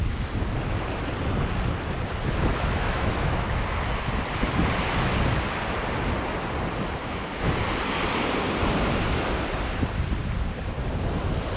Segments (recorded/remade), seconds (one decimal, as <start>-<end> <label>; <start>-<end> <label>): 0.0-2.5 recorded; 2.5-3.5 remade; 3.5-7.0 recorded; 7.0-7.5 remade; 7.5-11.6 recorded